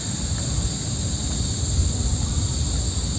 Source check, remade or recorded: recorded